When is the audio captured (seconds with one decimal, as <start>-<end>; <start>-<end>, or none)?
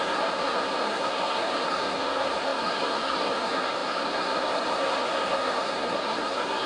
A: none